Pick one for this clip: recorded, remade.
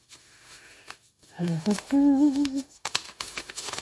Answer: remade